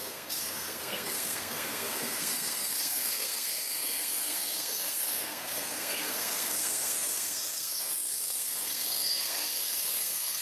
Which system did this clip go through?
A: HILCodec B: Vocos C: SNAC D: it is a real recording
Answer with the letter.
C